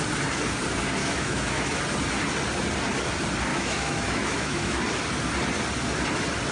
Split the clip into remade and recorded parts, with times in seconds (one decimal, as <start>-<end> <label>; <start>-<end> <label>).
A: 0.0-1.0 recorded; 1.0-1.8 remade; 1.8-3.5 recorded; 3.5-4.8 remade; 4.8-6.5 recorded